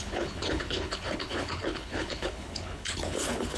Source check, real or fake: fake